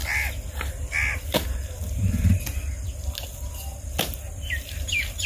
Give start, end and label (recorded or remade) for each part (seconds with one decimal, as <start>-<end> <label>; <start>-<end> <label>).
0.0-5.3 recorded